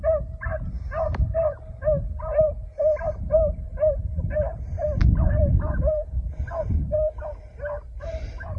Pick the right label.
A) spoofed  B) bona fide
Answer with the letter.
A